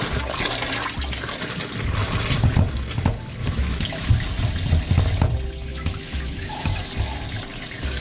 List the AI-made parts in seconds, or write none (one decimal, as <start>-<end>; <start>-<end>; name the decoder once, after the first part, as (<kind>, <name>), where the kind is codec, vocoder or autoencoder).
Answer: 3.4-4.1 (autoencoder, DAC-VAE); 5.7-6.9